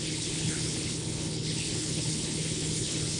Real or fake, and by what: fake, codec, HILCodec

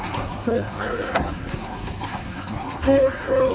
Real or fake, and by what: fake, codec, SNAC